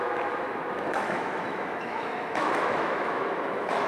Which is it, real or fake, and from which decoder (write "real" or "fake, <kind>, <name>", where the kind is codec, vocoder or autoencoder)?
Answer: fake, autoencoder, DAC-VAE